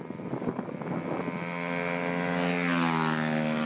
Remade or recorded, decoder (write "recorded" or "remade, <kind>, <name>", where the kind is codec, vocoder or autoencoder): recorded